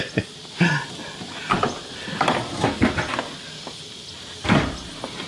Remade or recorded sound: recorded